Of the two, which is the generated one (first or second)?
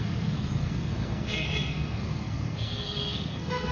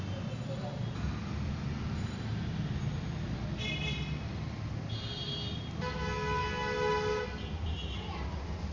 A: first